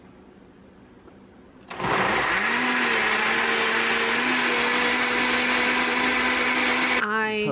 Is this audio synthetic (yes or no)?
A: no